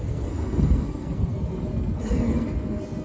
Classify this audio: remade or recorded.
remade